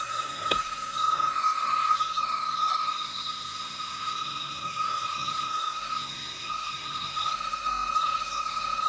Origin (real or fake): fake